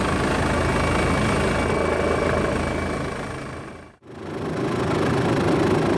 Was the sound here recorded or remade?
recorded